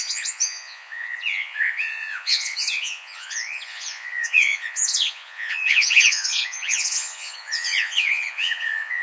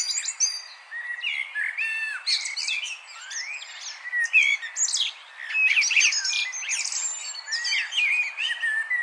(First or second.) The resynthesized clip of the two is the first